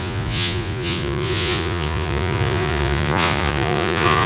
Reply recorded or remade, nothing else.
remade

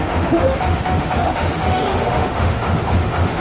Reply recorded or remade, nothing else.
remade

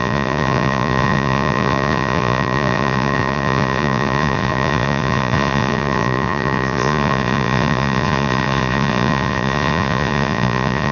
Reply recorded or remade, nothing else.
remade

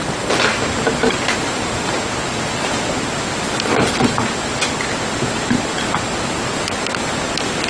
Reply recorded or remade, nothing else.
recorded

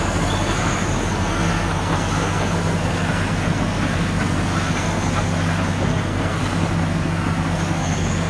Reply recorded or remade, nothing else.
remade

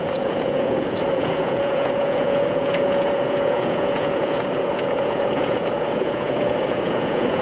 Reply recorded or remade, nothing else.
remade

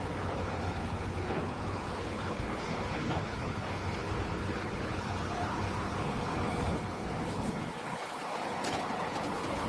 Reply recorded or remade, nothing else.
remade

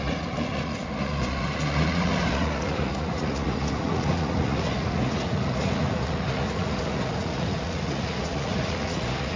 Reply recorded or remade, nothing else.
remade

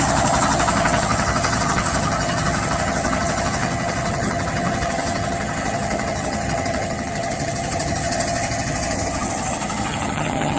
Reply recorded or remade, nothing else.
remade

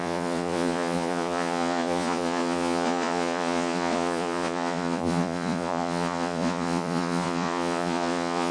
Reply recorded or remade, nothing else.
remade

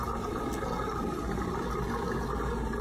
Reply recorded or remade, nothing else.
recorded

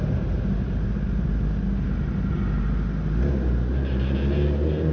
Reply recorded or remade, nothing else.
recorded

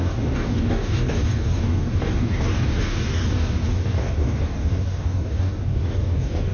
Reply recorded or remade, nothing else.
remade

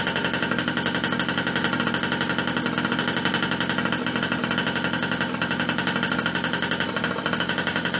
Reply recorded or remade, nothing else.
recorded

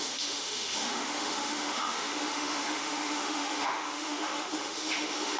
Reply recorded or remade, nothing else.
remade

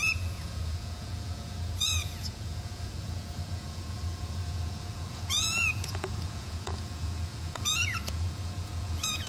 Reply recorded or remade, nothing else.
remade